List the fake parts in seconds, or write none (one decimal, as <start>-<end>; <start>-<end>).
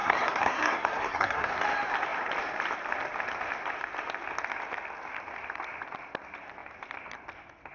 0.0-1.5